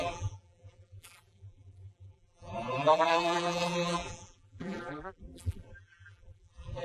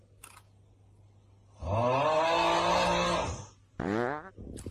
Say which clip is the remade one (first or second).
first